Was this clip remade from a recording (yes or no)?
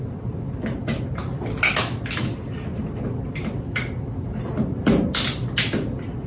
no